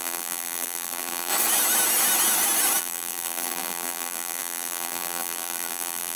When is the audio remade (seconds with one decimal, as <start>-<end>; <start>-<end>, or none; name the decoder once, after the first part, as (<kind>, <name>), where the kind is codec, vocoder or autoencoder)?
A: 0.0-1.3 (vocoder, BigVGAN v2); 2.8-6.2